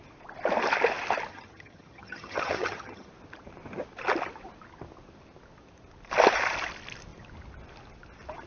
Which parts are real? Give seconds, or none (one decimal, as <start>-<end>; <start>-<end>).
0.0-1.3; 3.1-8.5